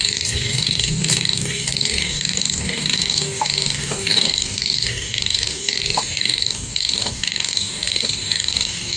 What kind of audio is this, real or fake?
fake